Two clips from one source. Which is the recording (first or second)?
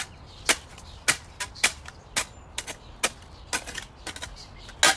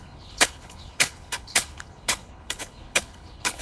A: first